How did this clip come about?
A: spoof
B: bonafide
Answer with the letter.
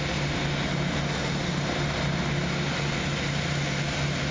B